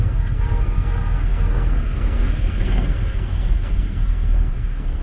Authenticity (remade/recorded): remade